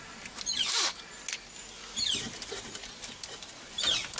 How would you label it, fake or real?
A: real